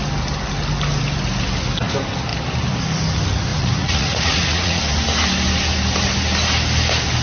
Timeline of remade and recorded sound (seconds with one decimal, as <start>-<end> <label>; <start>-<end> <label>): 0.0-3.5 recorded; 3.5-4.8 remade; 4.8-7.2 recorded